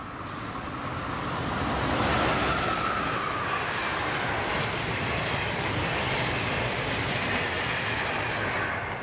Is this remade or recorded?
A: recorded